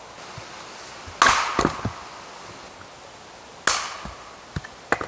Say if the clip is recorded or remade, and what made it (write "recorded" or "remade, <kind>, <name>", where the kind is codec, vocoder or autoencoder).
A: recorded